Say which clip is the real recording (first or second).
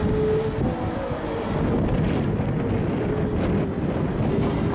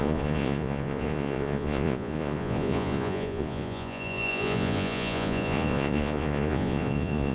first